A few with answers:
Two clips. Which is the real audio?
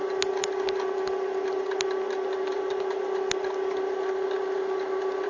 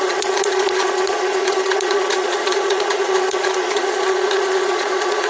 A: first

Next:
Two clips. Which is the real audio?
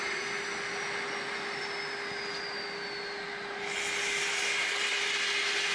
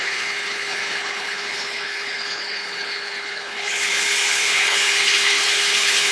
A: first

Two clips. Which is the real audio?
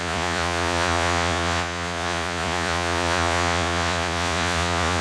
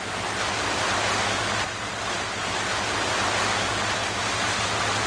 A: second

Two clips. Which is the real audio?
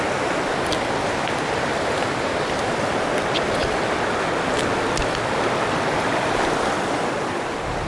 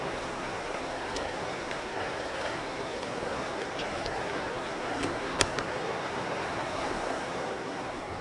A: first